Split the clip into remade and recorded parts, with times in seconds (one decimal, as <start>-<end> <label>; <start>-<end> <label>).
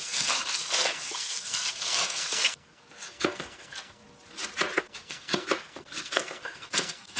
0.0-4.0 remade; 4.0-4.8 recorded; 4.8-7.2 remade